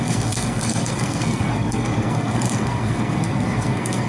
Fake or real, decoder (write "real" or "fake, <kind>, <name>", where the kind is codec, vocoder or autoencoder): fake, codec, SNAC